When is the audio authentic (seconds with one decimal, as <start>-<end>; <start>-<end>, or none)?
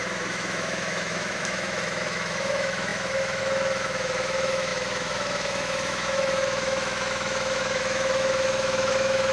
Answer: none